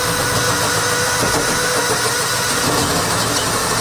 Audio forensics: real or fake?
real